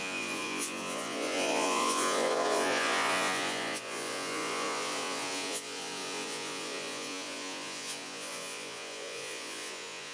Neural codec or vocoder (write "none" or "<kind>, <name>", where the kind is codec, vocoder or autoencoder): vocoder, Vocos